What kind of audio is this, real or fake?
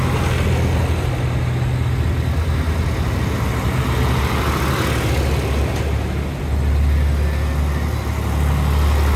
real